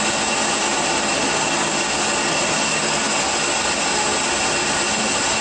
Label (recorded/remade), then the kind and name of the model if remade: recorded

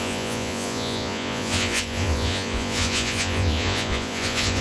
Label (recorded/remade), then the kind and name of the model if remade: remade, vocoder, Vocos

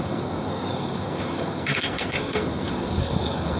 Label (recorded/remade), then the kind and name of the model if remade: remade, codec, SNAC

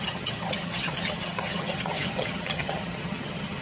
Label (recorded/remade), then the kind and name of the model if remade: remade, vocoder, HiFi-GAN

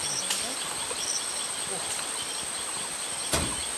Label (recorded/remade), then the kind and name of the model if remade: recorded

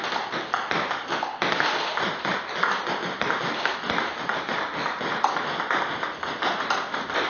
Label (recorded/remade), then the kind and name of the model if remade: recorded